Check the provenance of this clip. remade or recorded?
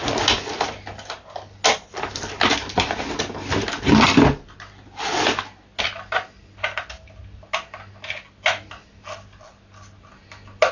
recorded